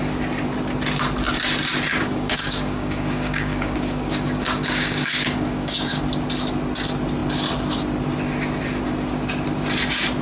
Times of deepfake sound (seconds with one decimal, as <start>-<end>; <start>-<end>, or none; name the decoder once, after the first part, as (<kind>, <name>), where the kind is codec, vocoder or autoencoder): 1.9-6.0 (codec, DAC)